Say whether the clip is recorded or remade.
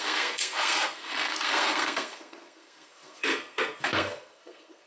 remade